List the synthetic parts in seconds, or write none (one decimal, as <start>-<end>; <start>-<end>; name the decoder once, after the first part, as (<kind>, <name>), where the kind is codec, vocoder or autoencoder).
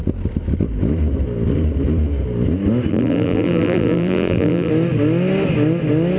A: 2.9-4.7 (vocoder, BigVGAN v2)